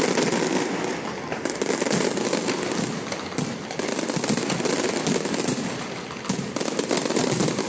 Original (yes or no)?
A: yes